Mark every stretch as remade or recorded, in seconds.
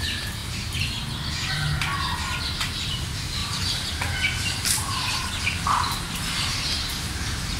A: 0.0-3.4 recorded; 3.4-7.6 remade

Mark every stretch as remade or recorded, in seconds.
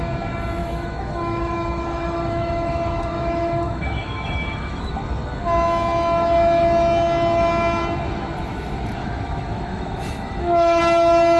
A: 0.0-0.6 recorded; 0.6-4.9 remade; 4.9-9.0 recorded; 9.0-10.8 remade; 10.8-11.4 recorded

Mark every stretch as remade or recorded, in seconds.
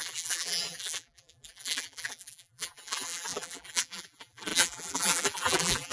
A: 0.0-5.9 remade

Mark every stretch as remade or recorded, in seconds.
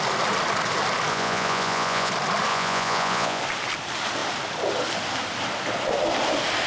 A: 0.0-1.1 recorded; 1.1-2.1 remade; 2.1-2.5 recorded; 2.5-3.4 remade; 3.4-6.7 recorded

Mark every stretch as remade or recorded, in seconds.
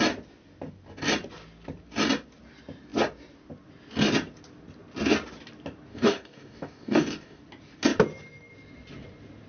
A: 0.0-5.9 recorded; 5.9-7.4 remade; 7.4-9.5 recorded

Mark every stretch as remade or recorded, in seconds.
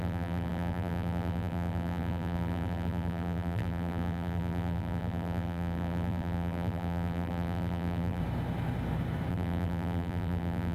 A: 0.0-8.2 remade; 8.2-9.3 recorded; 9.3-10.7 remade